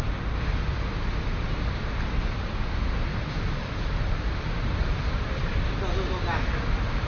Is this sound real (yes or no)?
yes